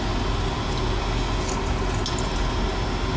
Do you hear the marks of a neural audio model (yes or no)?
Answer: no